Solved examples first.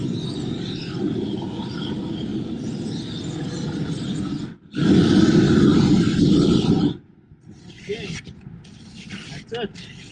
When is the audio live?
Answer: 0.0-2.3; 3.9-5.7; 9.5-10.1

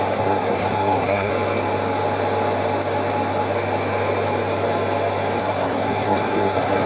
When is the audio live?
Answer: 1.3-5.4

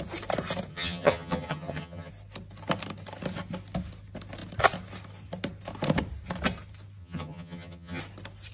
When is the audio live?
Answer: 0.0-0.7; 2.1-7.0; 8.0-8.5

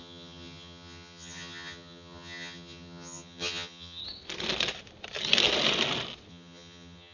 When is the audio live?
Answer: 4.0-6.3

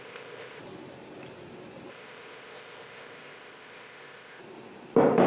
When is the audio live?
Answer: 0.6-1.9; 4.4-5.3

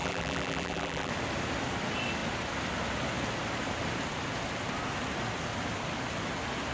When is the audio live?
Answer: 1.1-6.7

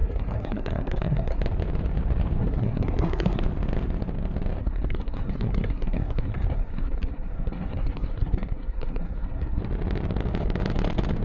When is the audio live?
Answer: 1.4-2.4; 3.4-4.6; 9.6-11.2